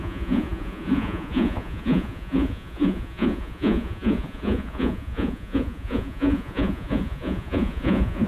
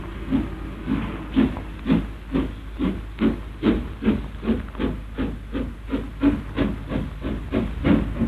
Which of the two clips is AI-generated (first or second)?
first